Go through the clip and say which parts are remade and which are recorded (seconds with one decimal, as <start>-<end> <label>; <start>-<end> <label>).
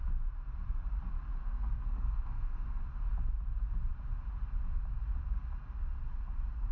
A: 0.0-1.4 recorded; 1.4-2.8 remade; 2.8-6.7 recorded